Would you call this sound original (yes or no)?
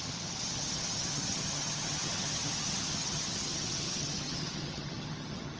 no